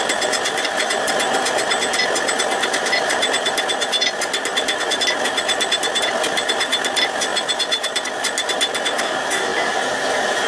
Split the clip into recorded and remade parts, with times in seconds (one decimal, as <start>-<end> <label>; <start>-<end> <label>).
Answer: 0.0-10.5 recorded